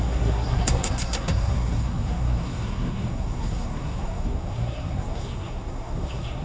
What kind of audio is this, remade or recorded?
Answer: remade